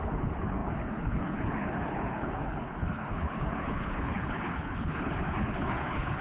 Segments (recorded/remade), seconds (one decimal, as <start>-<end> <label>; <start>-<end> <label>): 0.0-6.2 remade